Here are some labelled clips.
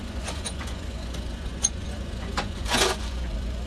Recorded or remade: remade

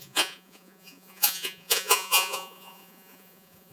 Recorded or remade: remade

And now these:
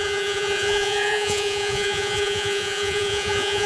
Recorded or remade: remade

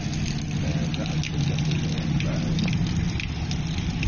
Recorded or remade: recorded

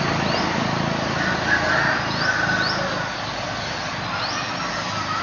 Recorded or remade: recorded